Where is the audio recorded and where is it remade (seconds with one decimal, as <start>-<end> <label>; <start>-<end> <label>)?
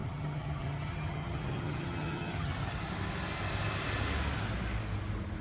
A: 0.0-2.8 remade; 2.8-5.4 recorded